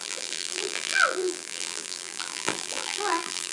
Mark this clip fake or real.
fake